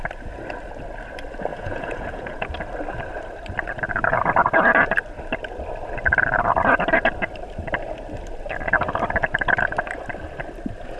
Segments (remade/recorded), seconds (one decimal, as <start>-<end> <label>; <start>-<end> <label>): 0.0-1.5 recorded; 1.5-2.5 remade; 2.5-11.0 recorded